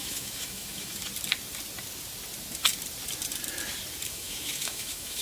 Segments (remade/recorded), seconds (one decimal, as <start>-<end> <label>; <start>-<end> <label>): 0.0-1.0 remade; 1.0-4.1 recorded; 4.1-5.2 remade